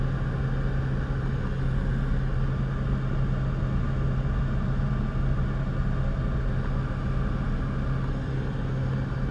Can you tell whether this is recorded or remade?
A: recorded